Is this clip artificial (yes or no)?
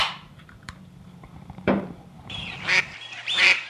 yes